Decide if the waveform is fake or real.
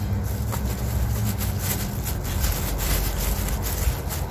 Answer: real